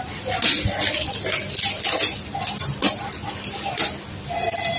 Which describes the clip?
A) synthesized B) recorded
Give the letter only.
B